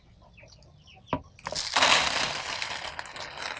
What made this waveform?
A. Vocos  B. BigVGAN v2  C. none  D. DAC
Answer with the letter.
C